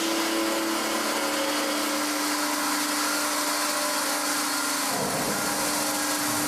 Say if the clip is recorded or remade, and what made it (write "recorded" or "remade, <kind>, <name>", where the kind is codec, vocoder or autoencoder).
recorded